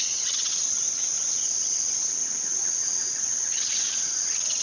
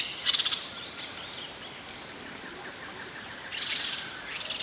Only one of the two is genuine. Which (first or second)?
second